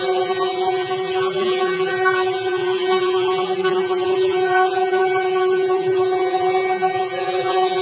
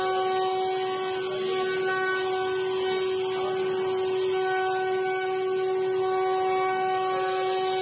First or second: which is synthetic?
first